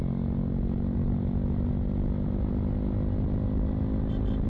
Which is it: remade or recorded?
recorded